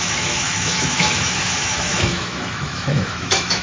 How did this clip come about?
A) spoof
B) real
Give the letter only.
A